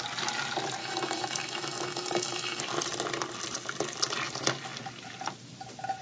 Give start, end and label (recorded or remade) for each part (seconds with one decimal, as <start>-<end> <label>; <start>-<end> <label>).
0.0-0.8 recorded; 0.8-2.6 remade; 2.6-6.0 recorded